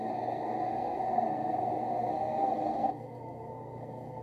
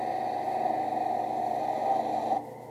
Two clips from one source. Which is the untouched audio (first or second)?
second